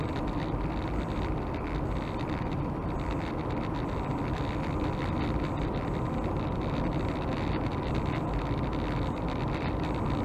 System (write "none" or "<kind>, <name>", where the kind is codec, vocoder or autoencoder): none